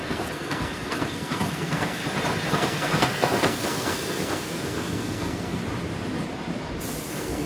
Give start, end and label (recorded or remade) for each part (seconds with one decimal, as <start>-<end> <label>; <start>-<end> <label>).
0.0-2.0 remade; 2.0-2.5 recorded; 2.5-5.6 remade; 5.6-7.1 recorded; 7.1-7.5 remade